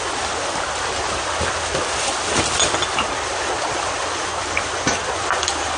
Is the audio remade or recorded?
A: recorded